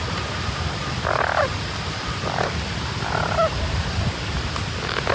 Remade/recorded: recorded